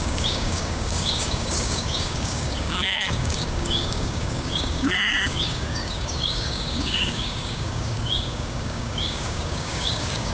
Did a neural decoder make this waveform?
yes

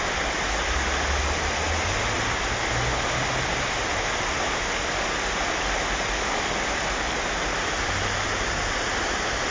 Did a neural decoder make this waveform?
no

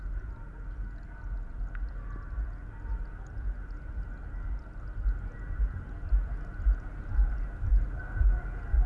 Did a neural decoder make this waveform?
no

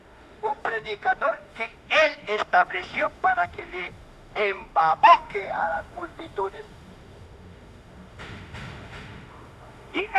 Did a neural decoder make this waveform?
yes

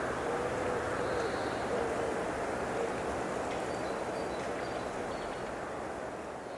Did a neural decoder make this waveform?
no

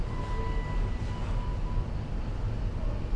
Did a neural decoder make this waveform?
no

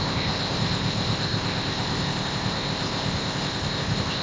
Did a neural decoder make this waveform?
yes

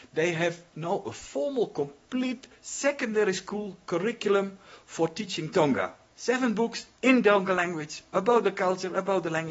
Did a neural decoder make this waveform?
yes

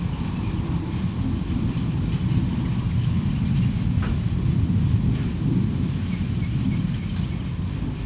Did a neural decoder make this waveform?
no